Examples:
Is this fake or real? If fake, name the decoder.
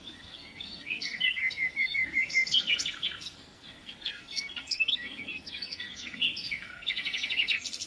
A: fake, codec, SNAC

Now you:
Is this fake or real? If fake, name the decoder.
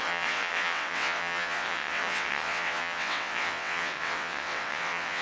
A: fake, vocoder, WaveNeXt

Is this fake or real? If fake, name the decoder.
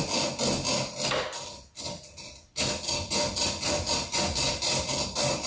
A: real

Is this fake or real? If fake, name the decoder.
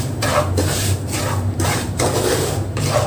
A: fake, vocoder, BigVGAN v2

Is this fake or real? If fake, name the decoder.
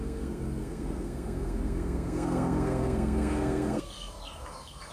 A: fake, codec, SNAC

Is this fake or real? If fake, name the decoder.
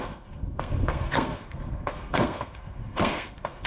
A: fake, codec, SNAC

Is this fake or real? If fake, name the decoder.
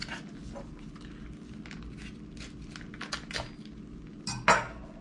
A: real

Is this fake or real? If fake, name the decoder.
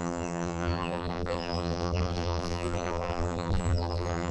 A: fake, vocoder, BigVGAN v2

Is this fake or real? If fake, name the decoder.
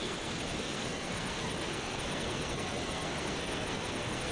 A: fake, codec, SNAC